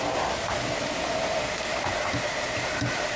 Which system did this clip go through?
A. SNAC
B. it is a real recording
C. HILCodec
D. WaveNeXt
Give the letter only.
B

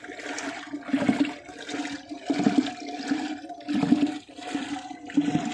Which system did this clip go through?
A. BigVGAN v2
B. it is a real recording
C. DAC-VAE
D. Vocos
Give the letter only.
B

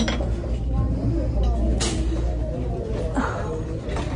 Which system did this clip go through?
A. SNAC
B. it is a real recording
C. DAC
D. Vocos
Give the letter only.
B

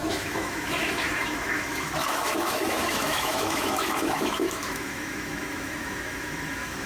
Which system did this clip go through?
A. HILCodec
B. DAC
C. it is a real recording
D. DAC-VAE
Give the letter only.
D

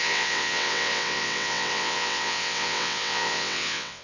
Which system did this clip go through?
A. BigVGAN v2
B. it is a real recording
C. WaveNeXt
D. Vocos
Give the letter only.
C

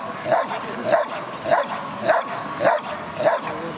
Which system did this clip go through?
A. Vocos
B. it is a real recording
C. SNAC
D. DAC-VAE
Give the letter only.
B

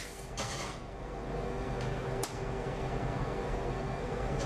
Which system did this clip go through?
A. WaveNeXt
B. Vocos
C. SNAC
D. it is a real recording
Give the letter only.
C